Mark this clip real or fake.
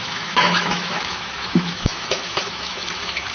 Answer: fake